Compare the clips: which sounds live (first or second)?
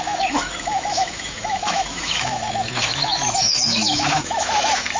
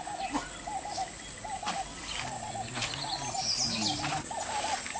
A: second